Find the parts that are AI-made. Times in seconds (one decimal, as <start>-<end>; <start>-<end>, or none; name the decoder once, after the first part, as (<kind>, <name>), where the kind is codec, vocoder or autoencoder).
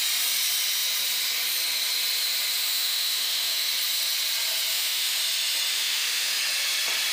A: 2.7-3.7 (autoencoder, DAC-VAE); 4.7-5.2; 5.7-6.4